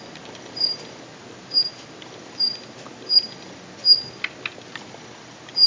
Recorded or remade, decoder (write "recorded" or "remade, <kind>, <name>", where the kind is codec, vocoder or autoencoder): recorded